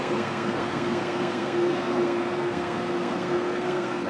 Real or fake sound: fake